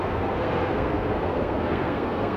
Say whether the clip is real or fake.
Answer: fake